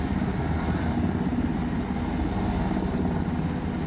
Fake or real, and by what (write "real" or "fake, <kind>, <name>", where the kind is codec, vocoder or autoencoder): real